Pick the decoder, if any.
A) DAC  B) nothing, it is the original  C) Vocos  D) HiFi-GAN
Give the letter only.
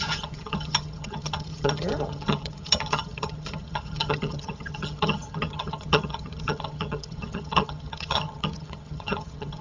D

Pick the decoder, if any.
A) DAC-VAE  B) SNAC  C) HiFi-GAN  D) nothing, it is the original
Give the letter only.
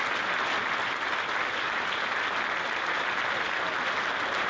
D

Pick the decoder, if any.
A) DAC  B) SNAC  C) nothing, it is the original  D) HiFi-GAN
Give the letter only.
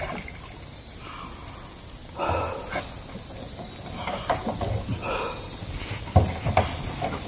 C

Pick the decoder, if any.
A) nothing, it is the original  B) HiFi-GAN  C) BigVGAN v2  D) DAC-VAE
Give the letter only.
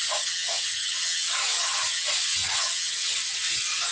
B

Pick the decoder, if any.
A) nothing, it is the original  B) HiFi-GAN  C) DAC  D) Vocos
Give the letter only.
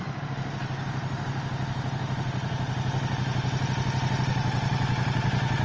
A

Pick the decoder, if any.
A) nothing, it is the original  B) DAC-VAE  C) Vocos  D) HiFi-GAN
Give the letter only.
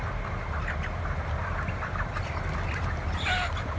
A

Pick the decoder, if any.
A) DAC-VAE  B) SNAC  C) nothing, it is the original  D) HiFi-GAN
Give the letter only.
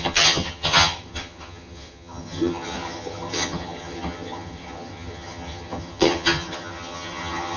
D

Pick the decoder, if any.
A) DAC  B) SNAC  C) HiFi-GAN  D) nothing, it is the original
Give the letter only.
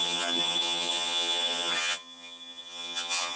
C